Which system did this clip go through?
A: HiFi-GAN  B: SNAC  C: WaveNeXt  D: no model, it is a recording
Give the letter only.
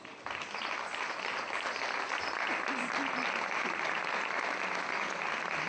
D